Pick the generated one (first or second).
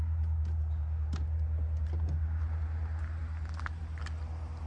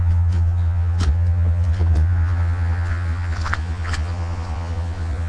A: second